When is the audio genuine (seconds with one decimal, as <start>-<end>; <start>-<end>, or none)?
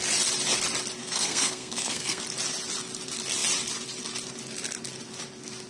0.0-1.0; 2.2-5.7